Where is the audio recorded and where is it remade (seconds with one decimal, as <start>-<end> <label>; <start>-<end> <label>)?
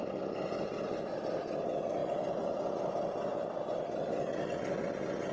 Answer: 0.0-2.0 recorded; 2.0-2.6 remade; 2.6-5.3 recorded